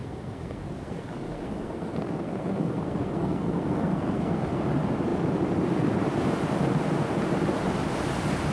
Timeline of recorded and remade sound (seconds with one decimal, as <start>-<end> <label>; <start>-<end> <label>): 0.0-4.6 remade; 4.6-8.5 recorded